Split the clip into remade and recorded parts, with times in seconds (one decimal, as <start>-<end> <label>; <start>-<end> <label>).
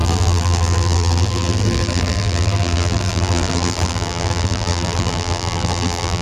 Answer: 0.0-6.2 remade